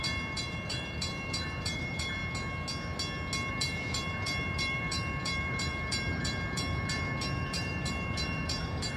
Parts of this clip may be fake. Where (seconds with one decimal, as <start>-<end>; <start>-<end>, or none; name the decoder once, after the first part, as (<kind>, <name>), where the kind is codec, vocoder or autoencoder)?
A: 0.0-2.2 (vocoder, BigVGAN v2); 3.5-9.0